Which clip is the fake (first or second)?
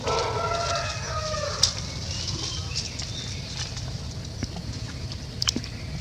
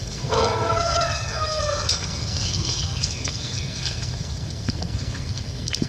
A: second